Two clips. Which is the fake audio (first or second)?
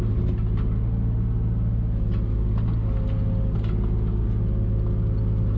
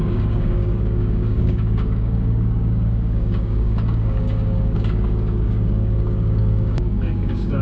second